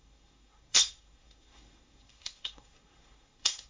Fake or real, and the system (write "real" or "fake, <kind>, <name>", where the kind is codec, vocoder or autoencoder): fake, codec, SNAC